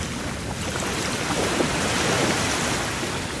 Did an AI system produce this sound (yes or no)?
no